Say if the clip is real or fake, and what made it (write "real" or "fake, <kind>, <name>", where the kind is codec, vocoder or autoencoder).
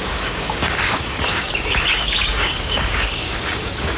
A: fake, codec, DAC